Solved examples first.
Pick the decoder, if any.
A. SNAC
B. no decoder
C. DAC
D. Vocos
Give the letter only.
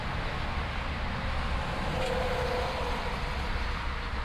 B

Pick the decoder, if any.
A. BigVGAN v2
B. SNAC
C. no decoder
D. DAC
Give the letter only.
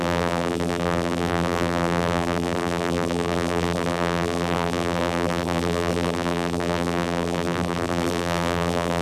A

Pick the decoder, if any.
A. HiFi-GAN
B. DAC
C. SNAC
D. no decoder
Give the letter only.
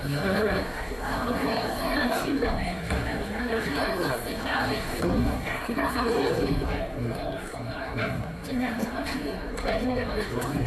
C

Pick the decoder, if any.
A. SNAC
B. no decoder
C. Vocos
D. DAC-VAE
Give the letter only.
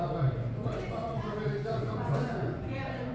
C